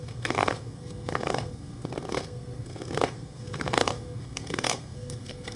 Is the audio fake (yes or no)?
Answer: yes